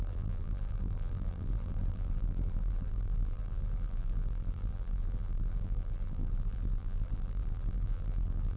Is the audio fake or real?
fake